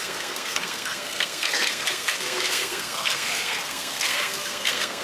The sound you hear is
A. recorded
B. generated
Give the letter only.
B